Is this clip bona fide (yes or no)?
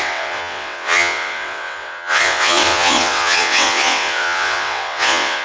no